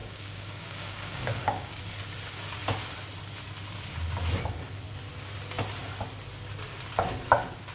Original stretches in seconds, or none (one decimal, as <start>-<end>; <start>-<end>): 1.8-7.7